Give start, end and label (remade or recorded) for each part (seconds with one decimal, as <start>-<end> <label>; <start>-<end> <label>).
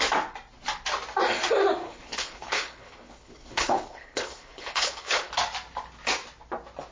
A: 0.0-1.8 recorded; 1.8-5.3 remade; 5.3-6.9 recorded